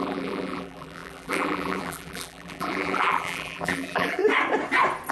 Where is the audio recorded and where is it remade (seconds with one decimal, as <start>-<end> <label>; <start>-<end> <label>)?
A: 0.0-4.2 remade; 4.2-5.1 recorded